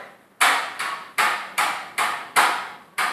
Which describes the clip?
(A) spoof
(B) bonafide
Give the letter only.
B